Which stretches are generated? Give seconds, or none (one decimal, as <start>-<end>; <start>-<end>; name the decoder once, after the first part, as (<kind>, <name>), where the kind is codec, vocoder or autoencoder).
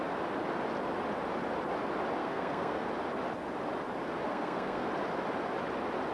2.2-2.9 (codec, SNAC); 4.3-4.9